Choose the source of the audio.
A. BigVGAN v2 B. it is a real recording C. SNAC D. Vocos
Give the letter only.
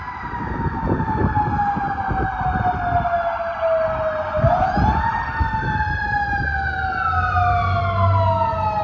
B